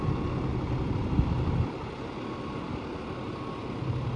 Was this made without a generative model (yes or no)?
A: yes